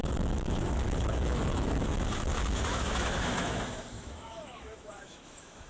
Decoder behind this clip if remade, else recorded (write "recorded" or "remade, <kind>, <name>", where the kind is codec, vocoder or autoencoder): remade, autoencoder, DAC-VAE